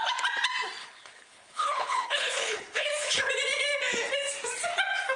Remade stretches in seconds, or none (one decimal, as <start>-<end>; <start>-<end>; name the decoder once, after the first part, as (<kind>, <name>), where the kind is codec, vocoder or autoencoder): 0.8-3.3 (codec, HILCodec)